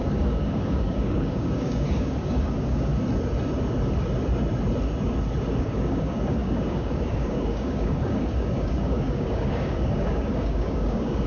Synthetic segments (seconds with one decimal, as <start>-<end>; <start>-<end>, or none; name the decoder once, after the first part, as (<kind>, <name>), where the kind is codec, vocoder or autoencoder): 0.0-2.9 (codec, DAC); 5.6-11.3